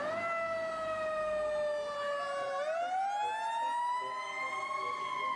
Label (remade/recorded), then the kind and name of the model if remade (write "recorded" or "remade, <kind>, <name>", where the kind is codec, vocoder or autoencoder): recorded